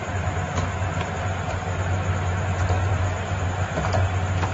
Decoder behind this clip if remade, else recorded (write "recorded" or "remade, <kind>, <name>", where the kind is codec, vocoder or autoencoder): remade, vocoder, BigVGAN v2